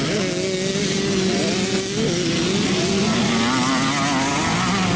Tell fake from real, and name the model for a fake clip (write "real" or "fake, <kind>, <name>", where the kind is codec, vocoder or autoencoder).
real